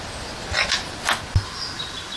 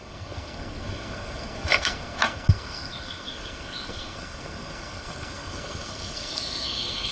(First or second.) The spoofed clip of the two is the second